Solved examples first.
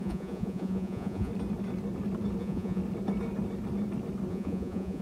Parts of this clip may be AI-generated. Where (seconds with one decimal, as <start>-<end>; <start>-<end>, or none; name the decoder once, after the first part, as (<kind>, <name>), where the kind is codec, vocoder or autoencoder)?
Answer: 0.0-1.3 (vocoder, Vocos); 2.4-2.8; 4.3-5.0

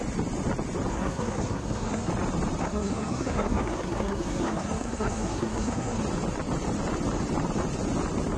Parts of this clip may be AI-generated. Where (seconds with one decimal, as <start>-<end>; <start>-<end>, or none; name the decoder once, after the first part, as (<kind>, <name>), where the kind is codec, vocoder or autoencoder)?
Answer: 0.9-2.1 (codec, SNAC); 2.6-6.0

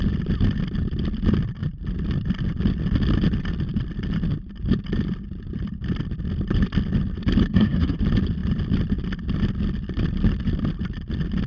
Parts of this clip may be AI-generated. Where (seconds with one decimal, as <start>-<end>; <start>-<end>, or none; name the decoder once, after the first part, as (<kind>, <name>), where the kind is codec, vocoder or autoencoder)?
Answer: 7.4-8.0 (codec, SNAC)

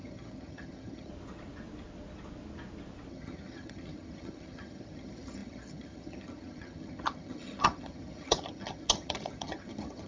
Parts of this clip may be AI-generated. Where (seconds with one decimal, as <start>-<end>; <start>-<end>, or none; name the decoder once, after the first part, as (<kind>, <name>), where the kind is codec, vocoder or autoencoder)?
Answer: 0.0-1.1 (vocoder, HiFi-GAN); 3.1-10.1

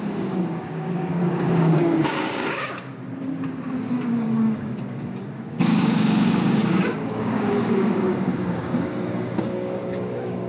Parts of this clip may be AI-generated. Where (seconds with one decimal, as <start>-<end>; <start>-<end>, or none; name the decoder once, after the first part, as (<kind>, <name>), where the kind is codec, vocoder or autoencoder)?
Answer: 0.0-2.9 (codec, DAC); 3.9-10.5